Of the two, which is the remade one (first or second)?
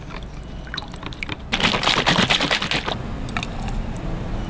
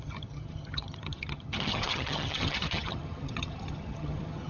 second